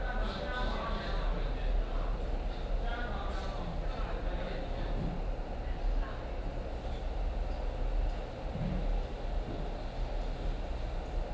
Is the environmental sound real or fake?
real